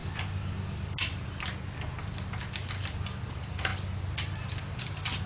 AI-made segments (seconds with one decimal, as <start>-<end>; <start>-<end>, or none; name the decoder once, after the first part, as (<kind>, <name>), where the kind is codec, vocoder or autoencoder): none